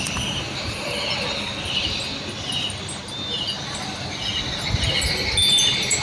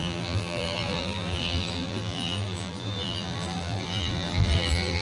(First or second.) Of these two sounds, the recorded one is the first